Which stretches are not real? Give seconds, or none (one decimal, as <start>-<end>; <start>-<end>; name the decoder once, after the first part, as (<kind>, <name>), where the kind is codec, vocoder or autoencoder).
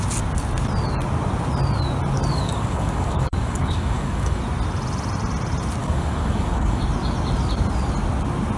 2.3-4.4 (codec, DAC); 5.8-6.8